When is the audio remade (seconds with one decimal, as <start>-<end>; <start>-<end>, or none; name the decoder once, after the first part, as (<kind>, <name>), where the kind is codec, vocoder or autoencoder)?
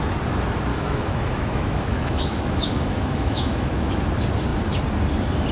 0.7-4.0 (autoencoder, DAC-VAE)